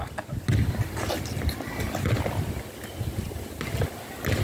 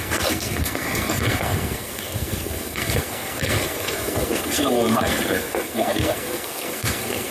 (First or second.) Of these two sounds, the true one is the first